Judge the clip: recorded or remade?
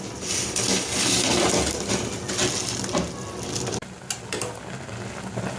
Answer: recorded